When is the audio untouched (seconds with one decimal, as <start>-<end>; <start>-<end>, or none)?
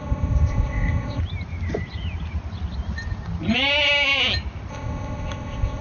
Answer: 1.2-4.7